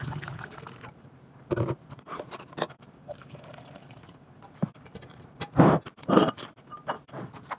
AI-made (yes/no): yes